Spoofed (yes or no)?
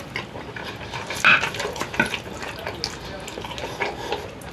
no